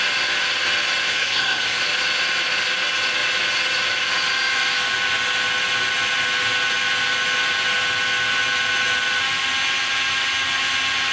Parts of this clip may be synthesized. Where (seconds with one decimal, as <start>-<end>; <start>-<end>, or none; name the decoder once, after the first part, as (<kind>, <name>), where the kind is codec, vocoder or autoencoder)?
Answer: 1.1-1.8 (codec, SNAC)